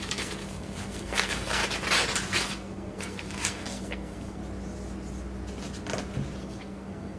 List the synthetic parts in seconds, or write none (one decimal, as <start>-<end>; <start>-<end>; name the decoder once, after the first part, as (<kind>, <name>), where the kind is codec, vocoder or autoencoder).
0.0-1.6 (codec, SNAC); 2.3-4.4; 6.4-7.2